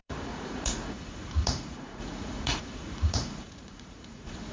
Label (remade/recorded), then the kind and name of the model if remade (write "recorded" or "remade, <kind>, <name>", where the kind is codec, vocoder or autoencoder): remade, vocoder, Vocos